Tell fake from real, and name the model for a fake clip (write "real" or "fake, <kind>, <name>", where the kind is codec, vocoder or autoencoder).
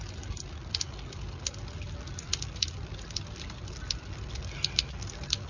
real